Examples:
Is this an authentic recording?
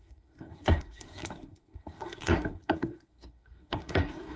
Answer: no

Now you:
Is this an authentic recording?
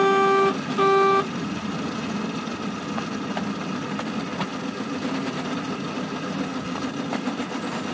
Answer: yes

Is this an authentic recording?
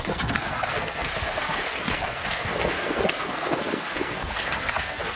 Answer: no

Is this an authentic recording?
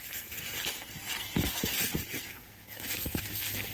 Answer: no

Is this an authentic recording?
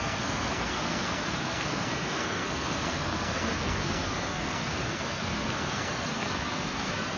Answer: no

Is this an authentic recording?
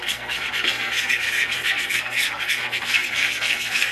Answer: no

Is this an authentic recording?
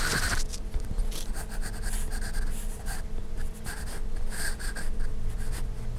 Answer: yes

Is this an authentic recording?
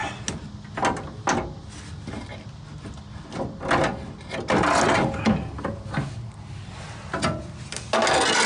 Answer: yes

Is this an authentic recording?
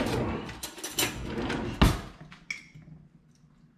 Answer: yes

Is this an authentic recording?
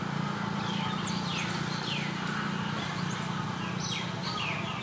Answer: yes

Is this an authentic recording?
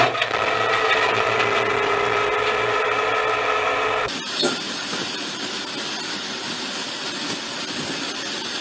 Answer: yes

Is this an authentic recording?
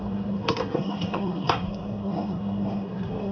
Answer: no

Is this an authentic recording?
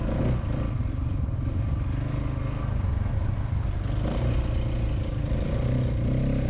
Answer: yes